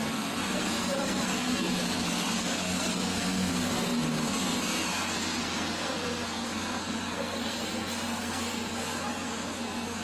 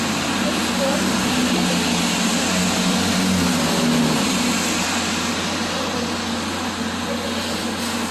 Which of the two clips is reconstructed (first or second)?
first